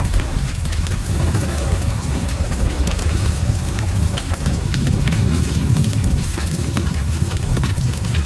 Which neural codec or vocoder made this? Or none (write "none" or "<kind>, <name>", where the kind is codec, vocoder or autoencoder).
codec, SNAC